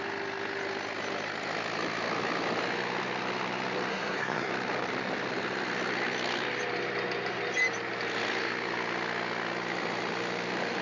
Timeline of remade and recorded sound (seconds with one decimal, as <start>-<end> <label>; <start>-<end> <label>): 0.0-3.9 recorded; 3.9-4.5 remade; 4.5-10.8 recorded